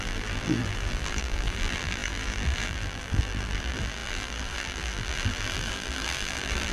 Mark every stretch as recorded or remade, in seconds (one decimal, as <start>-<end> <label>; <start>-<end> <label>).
0.0-6.7 remade